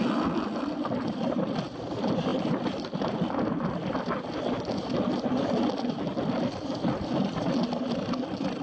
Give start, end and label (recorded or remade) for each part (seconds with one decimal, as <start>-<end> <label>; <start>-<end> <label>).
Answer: 0.0-8.6 recorded